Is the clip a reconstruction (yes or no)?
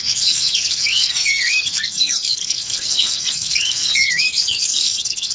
yes